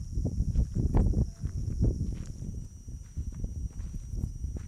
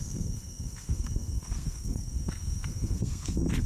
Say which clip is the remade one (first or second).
second